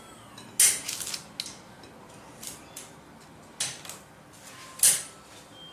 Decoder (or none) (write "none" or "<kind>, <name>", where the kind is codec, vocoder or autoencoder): none